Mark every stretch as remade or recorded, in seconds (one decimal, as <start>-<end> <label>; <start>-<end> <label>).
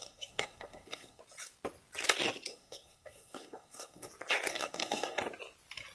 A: 0.0-1.2 remade; 1.2-2.5 recorded; 2.5-4.1 remade; 4.1-4.5 recorded; 4.5-5.2 remade; 5.2-5.9 recorded